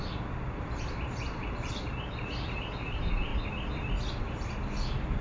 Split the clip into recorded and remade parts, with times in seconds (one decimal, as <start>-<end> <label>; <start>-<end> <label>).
0.0-3.3 remade; 3.3-4.2 recorded; 4.2-5.2 remade